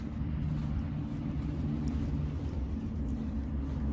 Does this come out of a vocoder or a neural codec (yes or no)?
no